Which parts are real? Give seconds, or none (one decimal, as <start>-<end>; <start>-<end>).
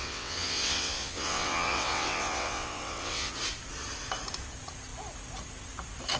3.3-6.2